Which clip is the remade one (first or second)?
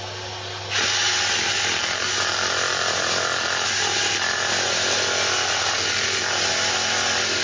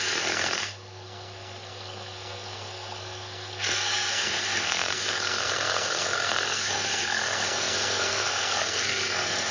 second